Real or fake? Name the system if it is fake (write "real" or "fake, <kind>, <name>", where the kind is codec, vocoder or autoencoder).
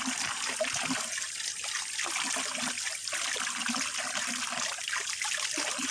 real